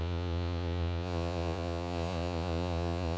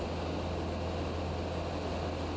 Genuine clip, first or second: second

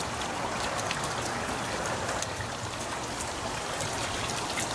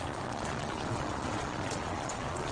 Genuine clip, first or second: first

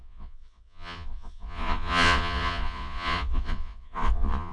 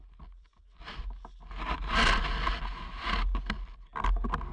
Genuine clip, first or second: second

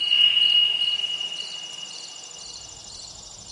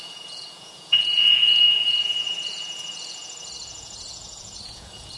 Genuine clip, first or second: first